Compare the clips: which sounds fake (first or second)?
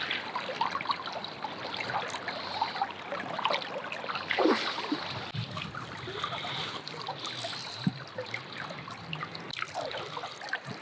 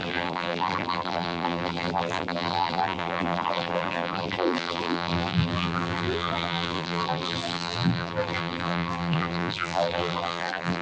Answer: second